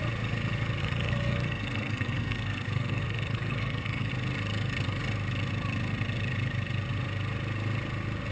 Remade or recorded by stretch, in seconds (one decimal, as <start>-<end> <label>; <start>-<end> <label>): 0.0-0.8 recorded; 0.8-4.1 remade; 4.1-8.3 recorded